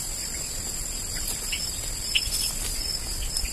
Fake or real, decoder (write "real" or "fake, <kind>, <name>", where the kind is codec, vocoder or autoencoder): real